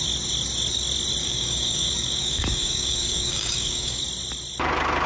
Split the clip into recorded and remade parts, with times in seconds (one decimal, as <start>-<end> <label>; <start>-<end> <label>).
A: 0.0-1.2 recorded; 1.2-4.0 remade; 4.0-5.1 recorded